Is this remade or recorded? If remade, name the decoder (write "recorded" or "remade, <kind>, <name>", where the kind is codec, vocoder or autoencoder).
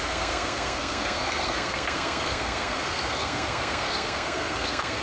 remade, codec, SNAC